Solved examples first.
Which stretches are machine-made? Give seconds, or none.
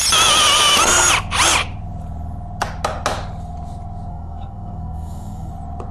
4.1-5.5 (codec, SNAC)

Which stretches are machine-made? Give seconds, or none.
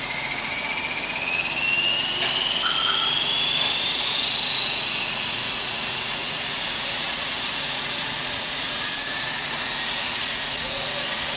0.0-0.8 (vocoder, Vocos); 3.9-11.4